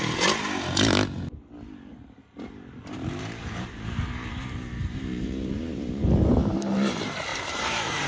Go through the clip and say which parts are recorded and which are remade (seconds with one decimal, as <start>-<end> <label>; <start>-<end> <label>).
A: 0.0-2.2 recorded; 2.2-6.1 remade; 6.1-7.3 recorded; 7.3-8.1 remade